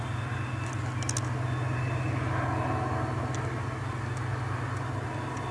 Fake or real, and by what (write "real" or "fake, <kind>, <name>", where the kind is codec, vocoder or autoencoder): real